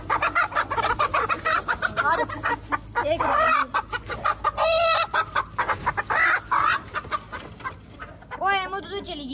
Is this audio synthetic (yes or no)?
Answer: no